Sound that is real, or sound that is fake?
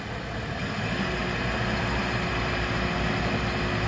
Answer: real